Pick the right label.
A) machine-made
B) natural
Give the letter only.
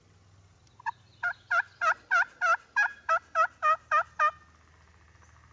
B